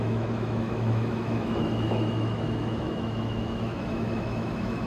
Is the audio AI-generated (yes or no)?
yes